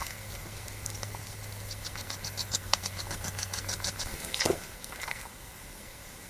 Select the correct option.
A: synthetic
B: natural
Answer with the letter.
A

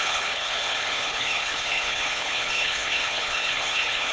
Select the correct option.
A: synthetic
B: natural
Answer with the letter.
A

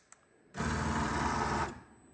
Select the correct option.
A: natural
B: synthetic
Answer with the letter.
A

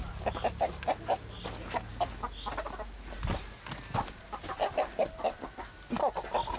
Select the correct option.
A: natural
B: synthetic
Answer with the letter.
A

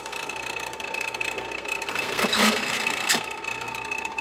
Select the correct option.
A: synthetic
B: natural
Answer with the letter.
A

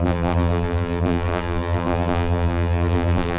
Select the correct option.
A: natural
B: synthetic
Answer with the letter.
B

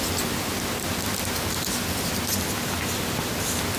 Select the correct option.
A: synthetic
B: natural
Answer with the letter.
B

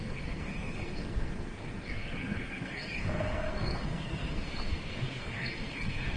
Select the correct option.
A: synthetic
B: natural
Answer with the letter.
A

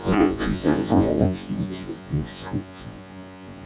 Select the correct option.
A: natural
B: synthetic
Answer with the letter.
B